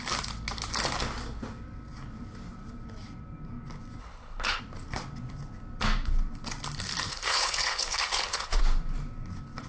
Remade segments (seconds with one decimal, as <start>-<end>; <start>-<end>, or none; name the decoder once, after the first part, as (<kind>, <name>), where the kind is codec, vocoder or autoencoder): 4.0-4.6 (codec, HILCodec); 7.1-8.6